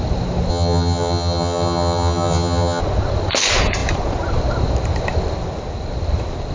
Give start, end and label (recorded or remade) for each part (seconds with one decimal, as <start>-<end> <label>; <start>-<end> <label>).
0.0-0.5 recorded; 0.5-2.8 remade; 2.8-6.5 recorded